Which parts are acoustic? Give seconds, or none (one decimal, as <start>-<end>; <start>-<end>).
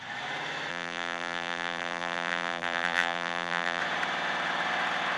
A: 0.0-0.7; 3.8-5.2